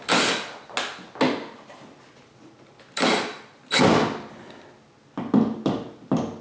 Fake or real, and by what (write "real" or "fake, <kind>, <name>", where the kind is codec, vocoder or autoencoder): real